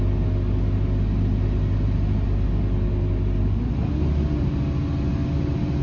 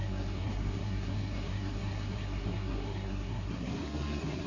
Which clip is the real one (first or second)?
first